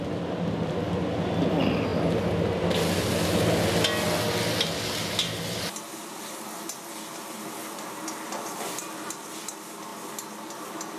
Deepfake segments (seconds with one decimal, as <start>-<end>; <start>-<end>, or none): none